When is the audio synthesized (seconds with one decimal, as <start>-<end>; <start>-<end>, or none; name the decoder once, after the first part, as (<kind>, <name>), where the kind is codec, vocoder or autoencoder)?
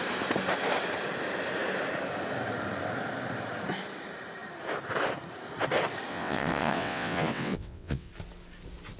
6.1-8.1 (vocoder, WaveNeXt)